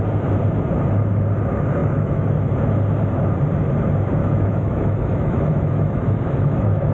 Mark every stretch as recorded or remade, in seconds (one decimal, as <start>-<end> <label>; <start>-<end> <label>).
0.0-1.8 recorded; 1.8-2.5 remade; 2.5-4.2 recorded; 4.2-6.9 remade